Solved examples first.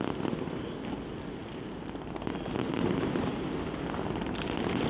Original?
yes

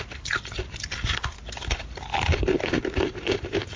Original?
yes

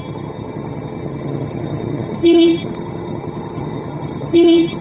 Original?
no